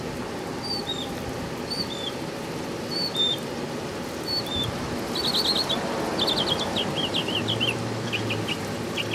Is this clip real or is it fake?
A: real